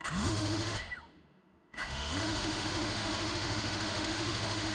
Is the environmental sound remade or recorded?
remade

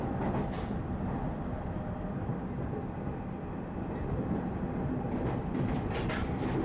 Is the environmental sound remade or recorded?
recorded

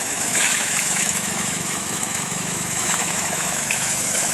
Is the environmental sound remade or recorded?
remade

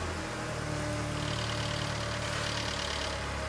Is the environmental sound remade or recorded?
recorded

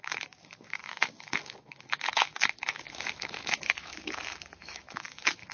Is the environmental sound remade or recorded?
remade